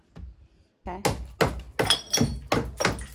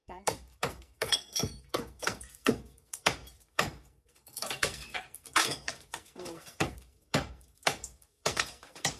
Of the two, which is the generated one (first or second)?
second